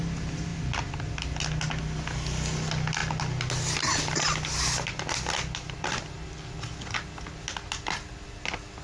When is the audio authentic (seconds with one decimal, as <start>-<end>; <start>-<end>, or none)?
0.0-8.8